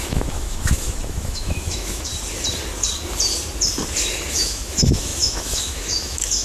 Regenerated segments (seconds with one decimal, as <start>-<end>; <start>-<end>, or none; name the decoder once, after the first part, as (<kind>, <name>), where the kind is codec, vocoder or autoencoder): 0.0-2.1 (autoencoder, DAC-VAE); 4.3-6.4